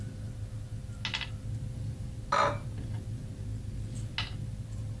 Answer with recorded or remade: recorded